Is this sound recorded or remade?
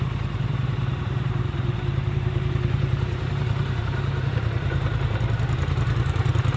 remade